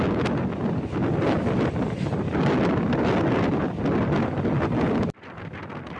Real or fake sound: real